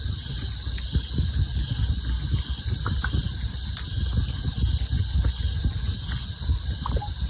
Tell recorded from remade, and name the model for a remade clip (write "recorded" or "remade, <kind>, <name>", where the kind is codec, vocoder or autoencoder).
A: recorded